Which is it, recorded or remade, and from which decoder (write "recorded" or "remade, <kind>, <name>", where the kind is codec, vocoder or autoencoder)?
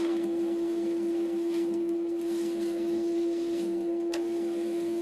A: remade, codec, SNAC